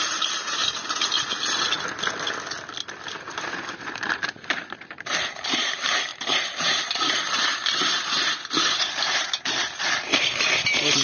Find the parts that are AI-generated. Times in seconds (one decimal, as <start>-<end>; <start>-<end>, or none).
0.0-0.6; 3.1-11.0